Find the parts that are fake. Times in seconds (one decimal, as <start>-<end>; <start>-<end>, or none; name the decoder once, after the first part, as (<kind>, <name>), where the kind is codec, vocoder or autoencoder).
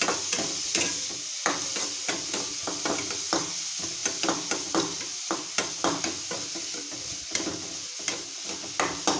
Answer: none